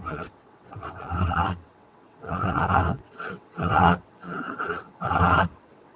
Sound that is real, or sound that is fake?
fake